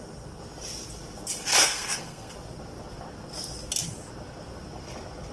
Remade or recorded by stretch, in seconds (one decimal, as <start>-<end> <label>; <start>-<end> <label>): 0.0-1.5 recorded; 1.5-2.3 remade; 2.3-5.3 recorded